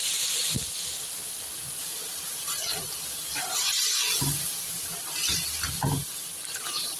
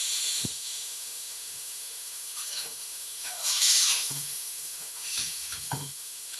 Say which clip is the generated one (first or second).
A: second